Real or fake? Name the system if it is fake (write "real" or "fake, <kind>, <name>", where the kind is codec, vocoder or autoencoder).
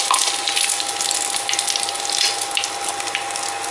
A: real